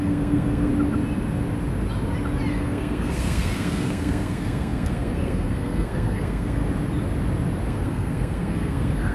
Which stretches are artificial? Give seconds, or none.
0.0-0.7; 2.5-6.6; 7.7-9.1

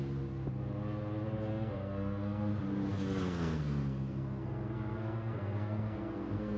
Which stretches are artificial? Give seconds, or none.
1.5-2.5; 2.9-6.6

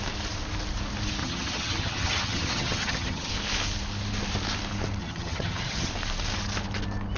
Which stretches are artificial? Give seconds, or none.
1.2-3.3; 5.0-5.9